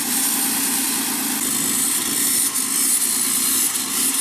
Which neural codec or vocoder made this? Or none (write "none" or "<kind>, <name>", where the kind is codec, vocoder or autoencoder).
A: none